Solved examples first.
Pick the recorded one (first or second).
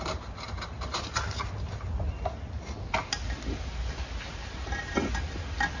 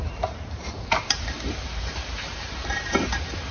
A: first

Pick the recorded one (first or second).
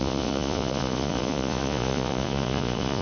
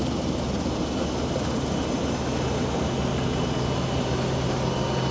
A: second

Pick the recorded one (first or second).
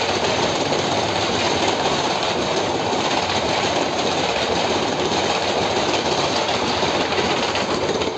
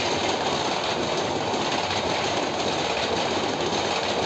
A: second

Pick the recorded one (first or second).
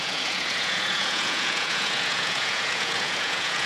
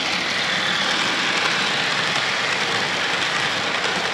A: second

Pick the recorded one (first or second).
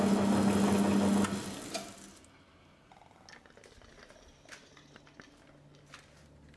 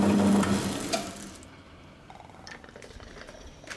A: first